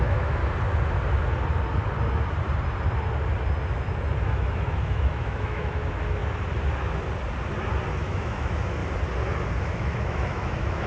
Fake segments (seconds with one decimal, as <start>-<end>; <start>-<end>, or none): 0.0-0.4; 4.2-6.2; 8.0-8.8; 9.6-10.9